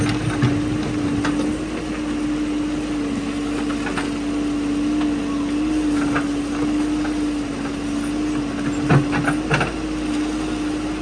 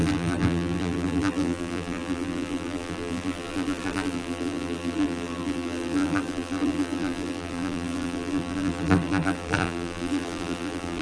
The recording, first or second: first